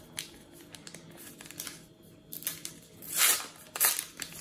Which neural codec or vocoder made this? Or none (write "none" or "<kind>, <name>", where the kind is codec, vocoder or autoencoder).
none